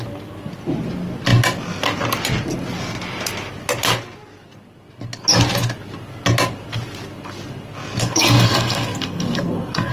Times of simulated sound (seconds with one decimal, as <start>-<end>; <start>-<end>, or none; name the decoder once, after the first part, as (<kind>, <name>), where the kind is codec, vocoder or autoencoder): 8.0-9.9 (codec, SNAC)